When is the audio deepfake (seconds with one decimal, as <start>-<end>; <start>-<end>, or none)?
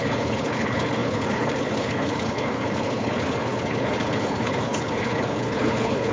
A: 0.0-6.1